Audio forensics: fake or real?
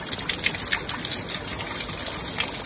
real